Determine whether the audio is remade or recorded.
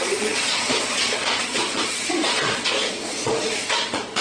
remade